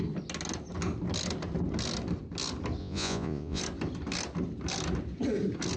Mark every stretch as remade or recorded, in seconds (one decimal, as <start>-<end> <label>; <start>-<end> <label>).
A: 0.0-2.8 recorded; 2.8-3.6 remade; 3.6-5.8 recorded